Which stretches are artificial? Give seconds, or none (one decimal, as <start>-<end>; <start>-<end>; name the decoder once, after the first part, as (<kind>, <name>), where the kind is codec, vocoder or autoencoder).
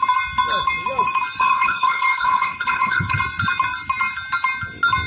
1.4-3.2 (codec, HILCodec)